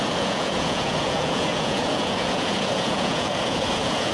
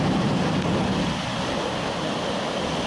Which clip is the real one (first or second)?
second